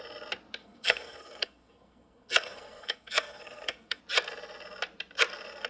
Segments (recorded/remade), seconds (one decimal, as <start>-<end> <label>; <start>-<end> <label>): 0.0-0.6 recorded; 0.6-4.0 remade; 4.0-5.7 recorded